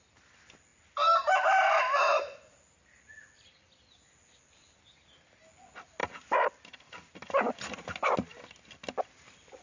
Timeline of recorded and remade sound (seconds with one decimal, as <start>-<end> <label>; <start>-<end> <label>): 0.0-9.6 recorded